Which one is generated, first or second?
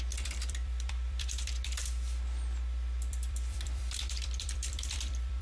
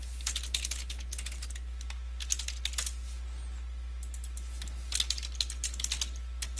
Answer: first